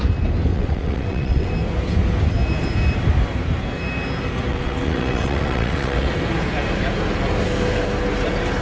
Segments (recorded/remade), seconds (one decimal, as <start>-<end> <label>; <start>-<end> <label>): 0.0-0.5 recorded; 0.5-1.5 remade; 1.5-4.5 recorded; 4.5-6.1 remade; 6.1-8.6 recorded